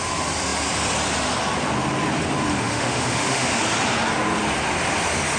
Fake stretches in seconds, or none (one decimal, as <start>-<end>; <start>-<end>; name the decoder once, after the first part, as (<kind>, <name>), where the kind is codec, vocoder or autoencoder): 2.5-3.6 (autoencoder, DAC-VAE)